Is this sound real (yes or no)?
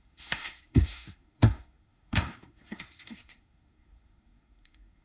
no